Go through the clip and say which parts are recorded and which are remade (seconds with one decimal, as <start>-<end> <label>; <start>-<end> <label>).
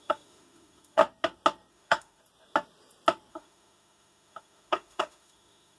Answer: 0.0-1.0 remade; 1.0-1.7 recorded; 1.7-2.2 remade; 2.2-3.3 recorded; 3.3-5.8 remade